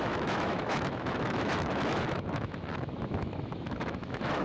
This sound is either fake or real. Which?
fake